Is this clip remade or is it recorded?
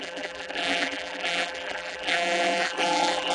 remade